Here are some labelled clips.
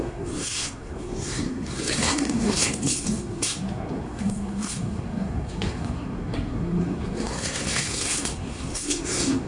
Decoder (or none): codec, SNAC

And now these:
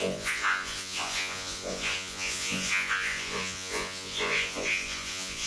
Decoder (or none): vocoder, Vocos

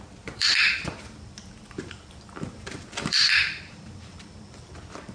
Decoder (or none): vocoder, BigVGAN v2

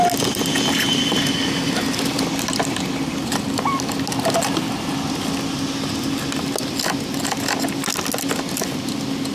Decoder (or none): none